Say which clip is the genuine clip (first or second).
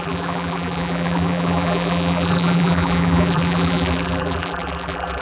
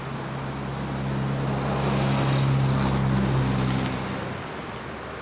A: second